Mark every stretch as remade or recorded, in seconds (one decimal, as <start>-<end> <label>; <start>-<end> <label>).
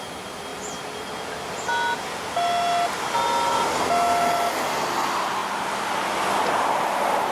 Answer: 0.0-7.3 recorded